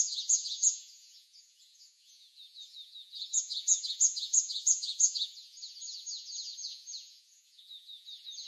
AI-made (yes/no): yes